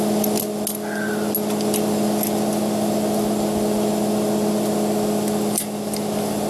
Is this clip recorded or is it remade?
recorded